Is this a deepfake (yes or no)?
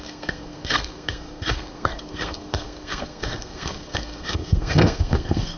yes